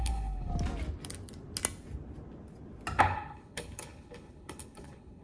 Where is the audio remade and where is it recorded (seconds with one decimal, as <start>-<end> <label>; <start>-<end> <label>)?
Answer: 0.0-0.5 remade; 0.5-3.0 recorded; 3.0-5.2 remade